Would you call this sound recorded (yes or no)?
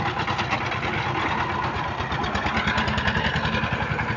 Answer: yes